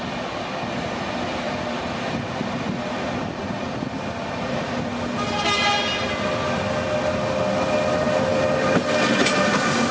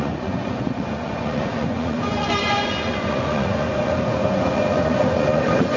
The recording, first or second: first